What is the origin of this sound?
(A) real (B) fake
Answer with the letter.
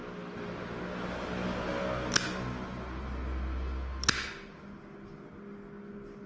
A